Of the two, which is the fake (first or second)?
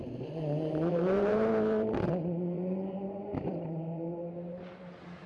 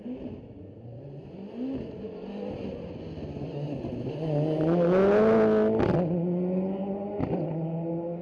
first